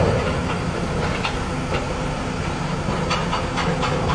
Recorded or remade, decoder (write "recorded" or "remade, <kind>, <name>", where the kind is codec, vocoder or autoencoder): recorded